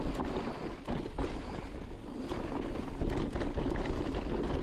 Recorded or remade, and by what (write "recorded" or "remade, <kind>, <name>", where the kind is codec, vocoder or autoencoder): recorded